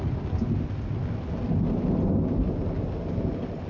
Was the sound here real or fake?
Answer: real